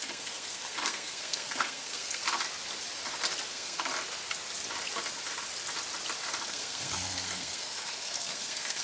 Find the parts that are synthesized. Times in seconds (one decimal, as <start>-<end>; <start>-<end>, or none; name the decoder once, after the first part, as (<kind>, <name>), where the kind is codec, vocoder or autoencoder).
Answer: 0.0-2.2 (codec, SNAC); 3.5-3.9; 6.5-8.8